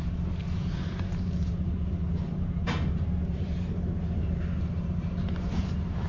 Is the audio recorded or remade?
remade